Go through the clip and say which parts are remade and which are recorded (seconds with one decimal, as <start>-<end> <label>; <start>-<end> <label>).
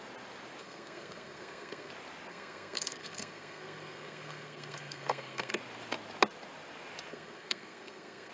0.0-0.6 recorded; 0.6-1.9 remade; 1.9-2.3 recorded; 2.3-5.6 remade; 5.6-7.1 recorded; 7.1-8.3 remade